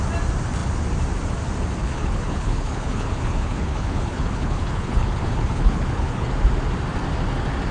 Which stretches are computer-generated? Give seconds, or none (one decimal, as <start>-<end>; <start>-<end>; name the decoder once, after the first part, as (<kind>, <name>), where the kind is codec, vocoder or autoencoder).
1.8-6.3 (codec, HILCodec)